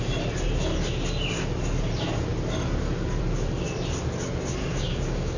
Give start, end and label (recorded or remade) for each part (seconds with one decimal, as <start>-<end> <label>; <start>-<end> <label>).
0.0-4.6 recorded; 4.6-5.4 remade